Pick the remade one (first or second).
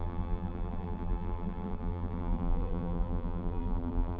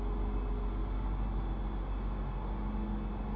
first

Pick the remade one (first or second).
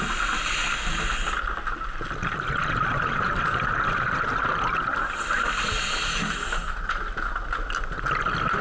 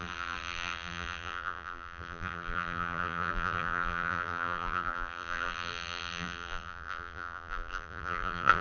second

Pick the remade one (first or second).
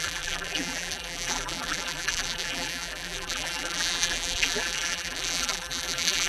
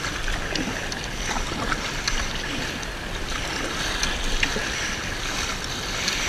first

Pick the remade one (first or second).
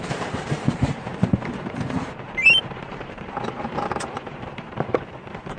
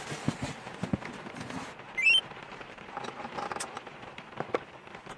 first